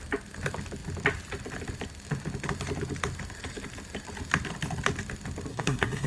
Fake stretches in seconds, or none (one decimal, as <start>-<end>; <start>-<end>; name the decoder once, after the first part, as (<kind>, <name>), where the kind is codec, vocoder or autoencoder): 5.5-6.1 (codec, SNAC)